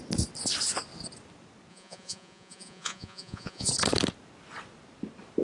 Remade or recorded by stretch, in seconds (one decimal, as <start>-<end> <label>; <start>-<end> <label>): 0.0-1.7 recorded; 1.7-3.7 remade; 3.7-5.4 recorded